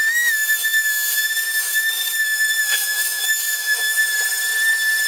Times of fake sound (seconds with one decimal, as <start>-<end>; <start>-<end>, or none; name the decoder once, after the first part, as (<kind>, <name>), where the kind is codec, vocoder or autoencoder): 0.0-4.0 (autoencoder, DAC-VAE)